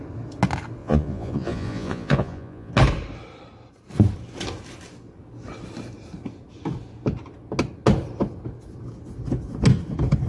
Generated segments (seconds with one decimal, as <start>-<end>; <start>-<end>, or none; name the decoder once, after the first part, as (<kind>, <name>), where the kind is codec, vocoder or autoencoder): 0.8-2.7 (vocoder, Vocos)